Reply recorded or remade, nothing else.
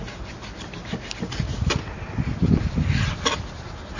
recorded